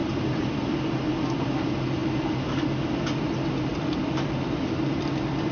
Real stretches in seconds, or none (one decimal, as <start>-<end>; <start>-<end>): 0.6-3.7